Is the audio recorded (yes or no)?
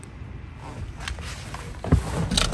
yes